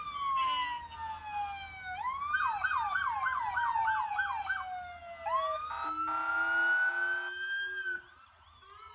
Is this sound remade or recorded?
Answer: recorded